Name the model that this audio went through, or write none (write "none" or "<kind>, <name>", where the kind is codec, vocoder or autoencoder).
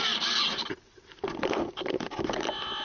none